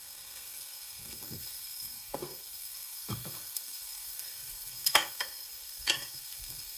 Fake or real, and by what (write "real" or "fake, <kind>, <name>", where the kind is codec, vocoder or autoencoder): fake, codec, SNAC